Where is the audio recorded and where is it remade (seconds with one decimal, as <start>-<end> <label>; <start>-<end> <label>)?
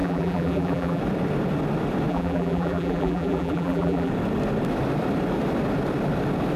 0.0-1.0 remade; 1.0-2.1 recorded; 2.1-4.1 remade; 4.1-6.6 recorded